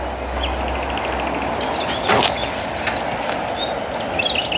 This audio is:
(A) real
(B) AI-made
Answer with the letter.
A